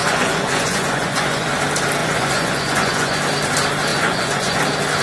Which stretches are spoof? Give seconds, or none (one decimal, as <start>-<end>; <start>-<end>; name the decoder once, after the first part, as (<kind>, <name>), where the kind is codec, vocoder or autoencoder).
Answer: 0.0-1.5 (vocoder, Vocos); 2.0-3.2; 3.9-4.6